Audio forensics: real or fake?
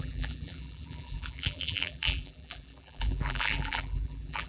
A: fake